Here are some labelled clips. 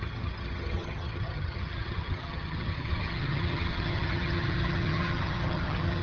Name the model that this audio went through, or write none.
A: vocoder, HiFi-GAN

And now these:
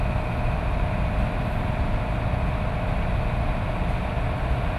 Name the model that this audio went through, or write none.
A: none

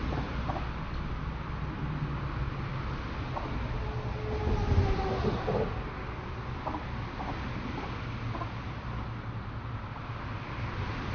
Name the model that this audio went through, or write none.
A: none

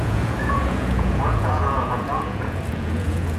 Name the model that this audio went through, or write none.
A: vocoder, Vocos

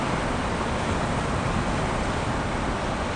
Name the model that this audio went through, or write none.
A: none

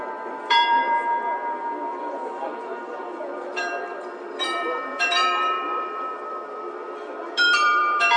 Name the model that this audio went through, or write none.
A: vocoder, BigVGAN v2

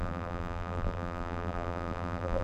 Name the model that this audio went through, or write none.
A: vocoder, BigVGAN v2